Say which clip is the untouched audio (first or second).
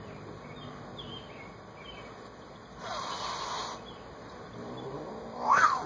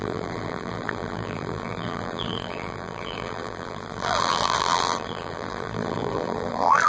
first